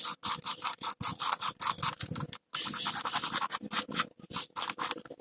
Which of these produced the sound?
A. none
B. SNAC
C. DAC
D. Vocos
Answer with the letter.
A